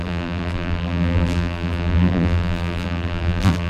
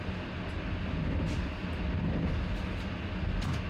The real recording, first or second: second